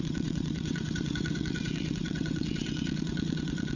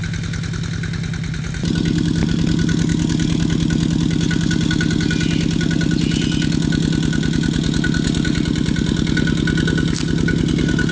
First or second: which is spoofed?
first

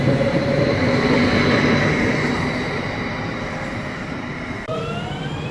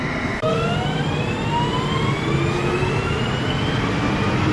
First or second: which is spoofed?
first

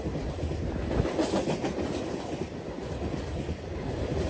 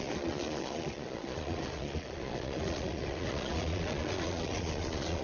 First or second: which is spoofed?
second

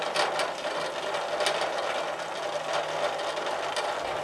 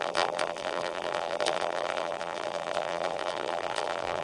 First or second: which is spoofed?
second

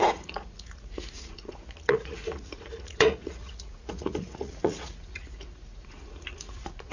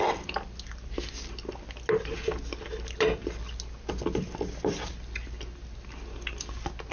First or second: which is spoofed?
first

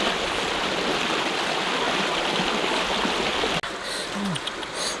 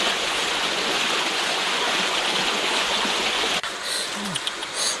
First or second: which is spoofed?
second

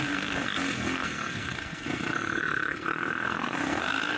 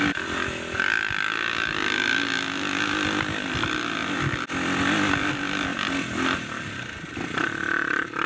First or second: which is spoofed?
first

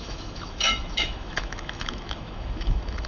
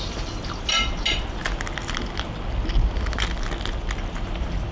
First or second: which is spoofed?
first